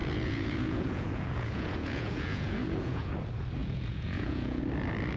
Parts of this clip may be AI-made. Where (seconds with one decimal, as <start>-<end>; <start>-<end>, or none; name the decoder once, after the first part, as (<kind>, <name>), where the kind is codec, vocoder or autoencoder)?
0.0-3.1 (vocoder, Vocos); 3.6-4.6